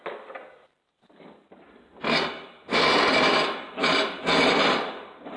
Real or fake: real